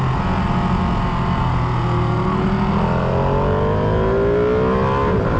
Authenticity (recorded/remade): recorded